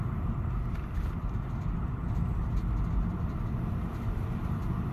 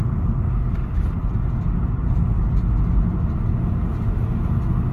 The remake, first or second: first